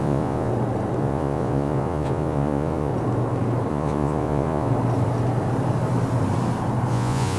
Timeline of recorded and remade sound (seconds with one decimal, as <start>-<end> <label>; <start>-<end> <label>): 0.0-0.5 remade; 0.5-1.0 recorded; 1.0-2.9 remade; 2.9-3.7 recorded; 3.7-4.7 remade; 4.7-6.9 recorded; 6.9-7.4 remade